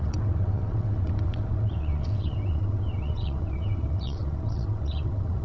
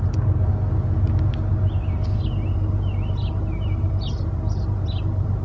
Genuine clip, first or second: second